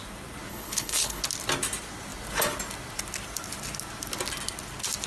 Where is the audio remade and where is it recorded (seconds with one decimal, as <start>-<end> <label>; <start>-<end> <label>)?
0.0-0.5 recorded; 0.5-1.2 remade; 1.2-5.1 recorded